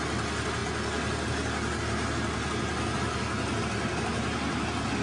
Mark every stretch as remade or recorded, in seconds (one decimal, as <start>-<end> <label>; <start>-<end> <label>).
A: 0.0-5.0 recorded